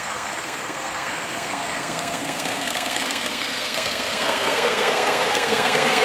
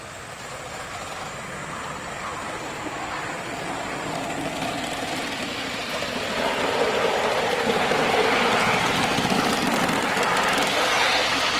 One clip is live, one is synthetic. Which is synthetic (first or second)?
first